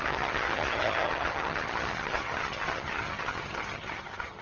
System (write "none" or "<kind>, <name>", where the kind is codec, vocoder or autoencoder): vocoder, HiFi-GAN